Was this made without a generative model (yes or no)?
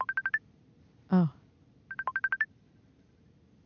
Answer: yes